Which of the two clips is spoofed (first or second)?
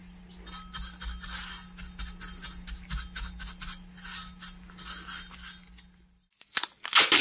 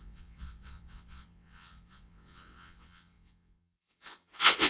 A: second